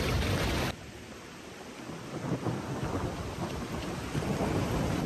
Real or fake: real